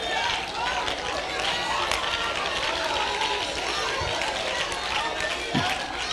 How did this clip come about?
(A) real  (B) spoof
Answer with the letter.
A